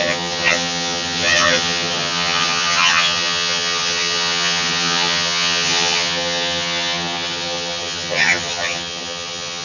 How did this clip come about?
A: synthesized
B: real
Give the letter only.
A